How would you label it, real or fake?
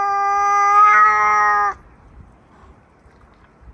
real